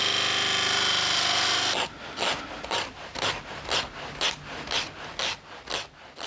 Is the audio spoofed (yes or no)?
no